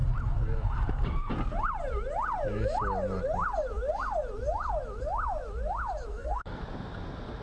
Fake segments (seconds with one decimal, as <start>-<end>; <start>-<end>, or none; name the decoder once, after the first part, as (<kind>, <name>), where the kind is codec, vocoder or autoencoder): 6.1-6.6 (codec, SNAC)